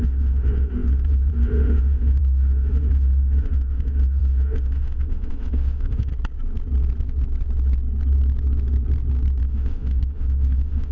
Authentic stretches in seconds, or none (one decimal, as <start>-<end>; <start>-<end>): 6.1-9.4